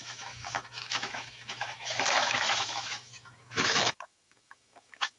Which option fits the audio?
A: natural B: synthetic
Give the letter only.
B